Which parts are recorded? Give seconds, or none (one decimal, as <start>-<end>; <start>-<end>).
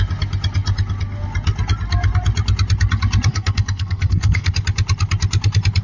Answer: 0.0-3.3; 4.5-5.8